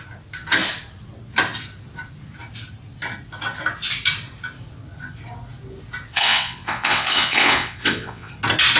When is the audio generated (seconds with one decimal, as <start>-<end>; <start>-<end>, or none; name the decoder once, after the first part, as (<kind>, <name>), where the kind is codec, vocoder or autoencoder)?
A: 6.1-8.3 (vocoder, WaveNeXt)